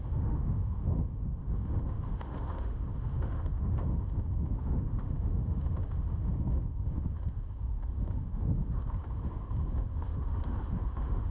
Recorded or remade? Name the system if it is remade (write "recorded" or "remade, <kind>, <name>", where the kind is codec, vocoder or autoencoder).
remade, autoencoder, DAC-VAE